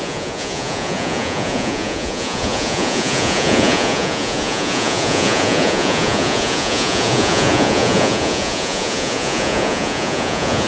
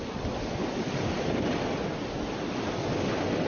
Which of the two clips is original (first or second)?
second